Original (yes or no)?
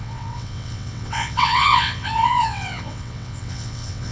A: no